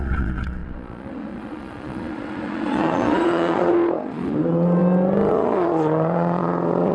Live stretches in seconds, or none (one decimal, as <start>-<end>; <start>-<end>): 4.8-5.3